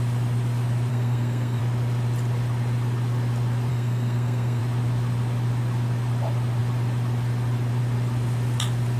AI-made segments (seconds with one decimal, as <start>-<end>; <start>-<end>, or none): 0.9-1.6; 3.7-4.6